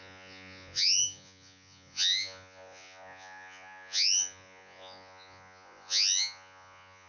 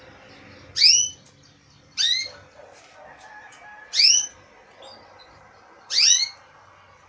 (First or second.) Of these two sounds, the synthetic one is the first